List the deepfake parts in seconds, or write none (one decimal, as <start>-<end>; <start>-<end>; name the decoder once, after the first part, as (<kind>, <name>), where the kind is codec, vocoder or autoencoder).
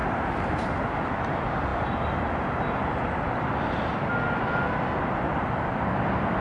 0.0-0.8 (vocoder, BigVGAN v2)